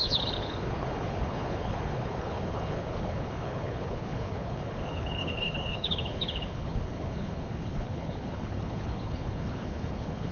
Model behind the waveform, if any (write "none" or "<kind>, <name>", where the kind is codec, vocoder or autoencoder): codec, HILCodec